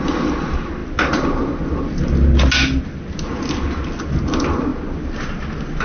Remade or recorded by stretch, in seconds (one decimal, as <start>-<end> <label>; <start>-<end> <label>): 0.0-5.8 recorded